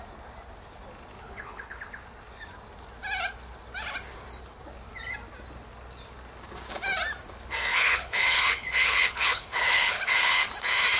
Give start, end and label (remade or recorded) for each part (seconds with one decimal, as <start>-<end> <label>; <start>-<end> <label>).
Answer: 0.0-1.2 recorded; 1.2-1.8 remade; 1.8-7.7 recorded; 7.7-10.5 remade; 10.5-11.0 recorded